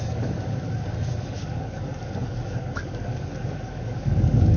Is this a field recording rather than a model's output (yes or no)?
no